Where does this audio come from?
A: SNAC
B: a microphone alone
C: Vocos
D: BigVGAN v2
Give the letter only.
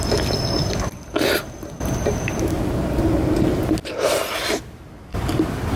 B